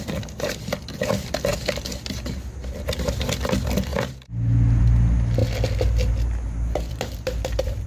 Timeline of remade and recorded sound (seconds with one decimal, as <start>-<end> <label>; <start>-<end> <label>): 0.0-1.5 remade; 1.5-3.1 recorded; 3.1-3.9 remade; 3.9-4.8 recorded; 4.8-5.4 remade; 5.4-6.9 recorded; 6.9-7.9 remade